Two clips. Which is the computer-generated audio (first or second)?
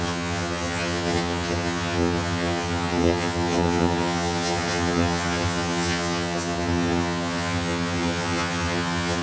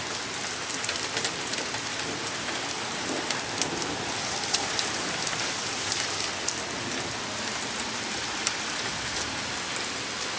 first